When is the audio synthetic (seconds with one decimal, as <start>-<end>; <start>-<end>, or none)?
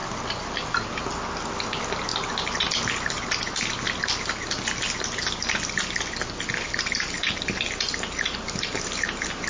none